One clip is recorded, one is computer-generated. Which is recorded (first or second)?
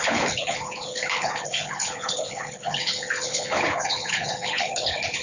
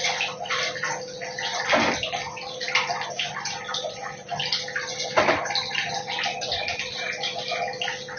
second